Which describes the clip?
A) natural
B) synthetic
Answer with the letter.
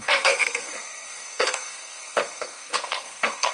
B